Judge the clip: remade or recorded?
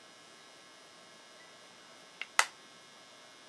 recorded